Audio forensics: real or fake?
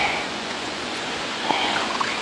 fake